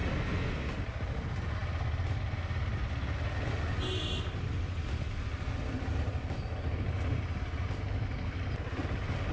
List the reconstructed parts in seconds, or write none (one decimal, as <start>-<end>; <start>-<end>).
none